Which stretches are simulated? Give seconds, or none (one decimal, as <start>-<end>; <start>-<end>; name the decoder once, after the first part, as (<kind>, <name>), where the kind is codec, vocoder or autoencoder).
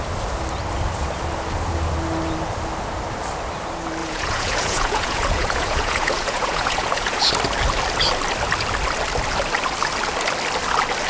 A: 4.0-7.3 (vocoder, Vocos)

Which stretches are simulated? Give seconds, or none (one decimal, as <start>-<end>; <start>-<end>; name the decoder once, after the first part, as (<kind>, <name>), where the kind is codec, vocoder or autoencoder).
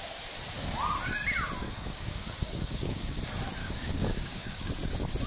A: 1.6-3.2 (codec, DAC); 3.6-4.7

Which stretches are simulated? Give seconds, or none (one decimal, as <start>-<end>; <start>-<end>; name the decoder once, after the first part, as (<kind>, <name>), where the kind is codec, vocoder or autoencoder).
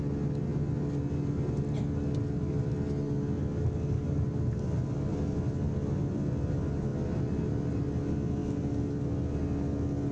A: none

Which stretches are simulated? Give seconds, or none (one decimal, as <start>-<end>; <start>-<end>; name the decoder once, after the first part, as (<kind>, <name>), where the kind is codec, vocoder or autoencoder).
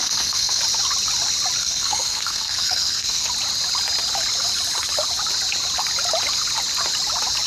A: 0.0-0.6 (codec, SNAC); 1.6-3.3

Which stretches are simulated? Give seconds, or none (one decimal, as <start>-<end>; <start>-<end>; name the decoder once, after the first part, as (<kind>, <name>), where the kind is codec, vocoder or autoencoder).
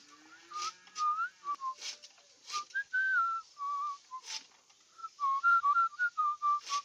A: 5.0-6.2 (vocoder, BigVGAN v2)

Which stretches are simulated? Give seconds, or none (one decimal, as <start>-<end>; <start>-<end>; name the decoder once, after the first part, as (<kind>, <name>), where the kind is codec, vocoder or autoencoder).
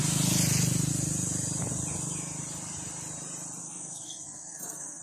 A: 3.6-5.0 (codec, SNAC)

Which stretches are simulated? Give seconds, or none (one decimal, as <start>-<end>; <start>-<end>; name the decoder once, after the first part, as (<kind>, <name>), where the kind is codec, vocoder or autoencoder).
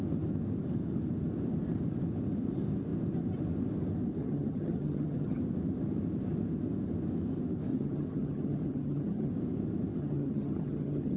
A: 4.2-5.4 (vocoder, HiFi-GAN); 7.7-9.3; 9.9-11.2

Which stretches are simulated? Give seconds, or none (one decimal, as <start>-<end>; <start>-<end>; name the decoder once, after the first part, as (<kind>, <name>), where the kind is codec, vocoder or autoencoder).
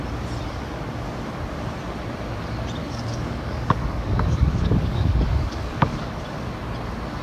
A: 2.8-6.2 (codec, DAC)